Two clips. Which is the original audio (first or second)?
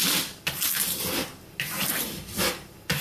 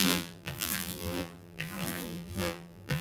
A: first